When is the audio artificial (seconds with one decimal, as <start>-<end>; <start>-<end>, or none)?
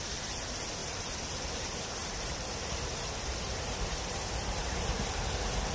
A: 0.8-1.6; 2.0-5.7